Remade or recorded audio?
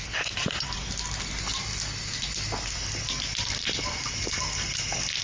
recorded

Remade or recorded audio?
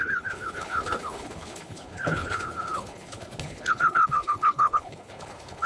remade